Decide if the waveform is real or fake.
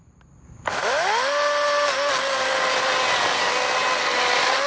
real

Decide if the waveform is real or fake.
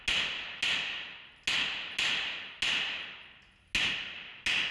real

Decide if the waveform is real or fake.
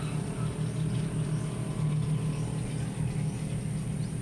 real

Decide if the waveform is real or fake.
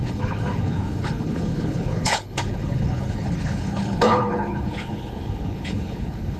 fake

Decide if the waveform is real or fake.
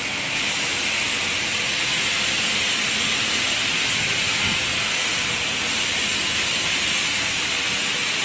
real